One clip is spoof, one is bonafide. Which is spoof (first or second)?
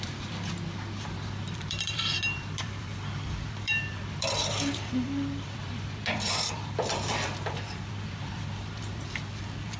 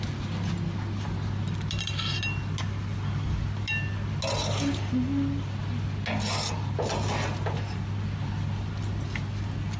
first